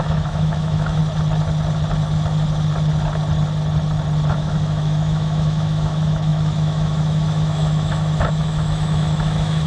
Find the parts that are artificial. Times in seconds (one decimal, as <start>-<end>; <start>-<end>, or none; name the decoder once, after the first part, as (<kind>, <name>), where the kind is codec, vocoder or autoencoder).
0.0-1.0 (autoencoder, DAC-VAE); 4.3-9.7

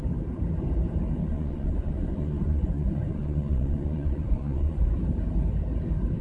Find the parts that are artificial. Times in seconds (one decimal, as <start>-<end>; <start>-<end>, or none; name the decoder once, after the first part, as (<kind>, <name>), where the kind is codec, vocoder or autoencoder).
1.2-4.9 (vocoder, Vocos)

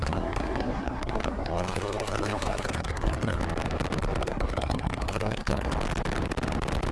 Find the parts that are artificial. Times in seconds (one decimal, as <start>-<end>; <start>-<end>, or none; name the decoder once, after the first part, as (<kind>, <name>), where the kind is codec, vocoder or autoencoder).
0.0-3.4 (codec, SNAC); 4.2-5.7